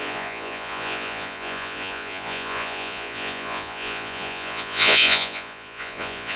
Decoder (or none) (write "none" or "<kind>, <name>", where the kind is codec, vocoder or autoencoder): vocoder, Vocos